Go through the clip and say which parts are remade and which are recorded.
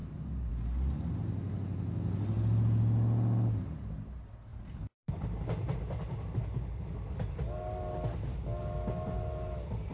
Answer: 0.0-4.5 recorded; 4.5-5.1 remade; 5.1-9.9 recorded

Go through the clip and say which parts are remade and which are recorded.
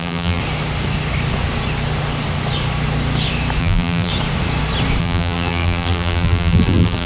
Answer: 0.0-0.4 remade; 0.4-3.6 recorded; 3.6-4.1 remade; 4.1-5.0 recorded; 5.0-7.1 remade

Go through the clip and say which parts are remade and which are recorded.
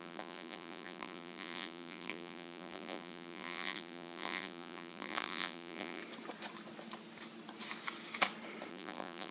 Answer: 0.0-6.0 remade; 6.0-8.7 recorded; 8.7-9.3 remade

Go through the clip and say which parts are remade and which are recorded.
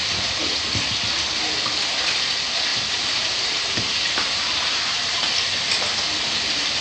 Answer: 0.0-0.5 remade; 0.5-2.7 recorded; 2.7-5.3 remade; 5.3-6.8 recorded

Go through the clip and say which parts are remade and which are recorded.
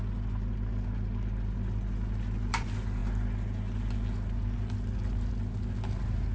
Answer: 0.0-6.3 recorded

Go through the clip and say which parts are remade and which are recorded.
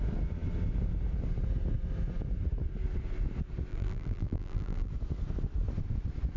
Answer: 0.0-3.7 recorded; 3.7-4.9 remade; 4.9-6.4 recorded